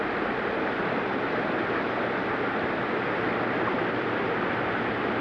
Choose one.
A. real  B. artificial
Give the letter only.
A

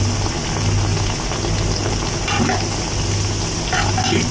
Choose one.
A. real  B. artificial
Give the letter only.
A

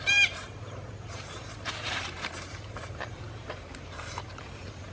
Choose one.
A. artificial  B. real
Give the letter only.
A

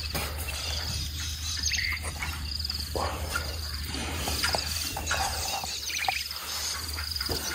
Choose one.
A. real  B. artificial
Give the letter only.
B